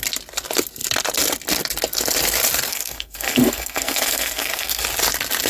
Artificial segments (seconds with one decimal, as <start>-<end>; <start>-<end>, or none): 2.7-4.8